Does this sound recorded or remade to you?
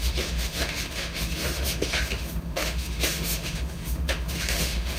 remade